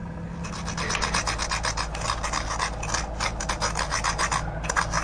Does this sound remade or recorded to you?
recorded